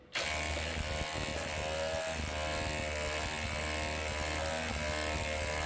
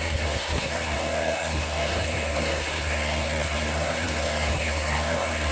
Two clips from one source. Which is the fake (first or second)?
second